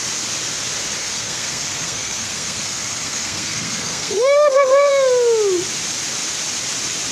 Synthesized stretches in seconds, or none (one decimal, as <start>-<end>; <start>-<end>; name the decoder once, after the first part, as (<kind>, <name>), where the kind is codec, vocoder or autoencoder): 1.0-4.9 (codec, SNAC)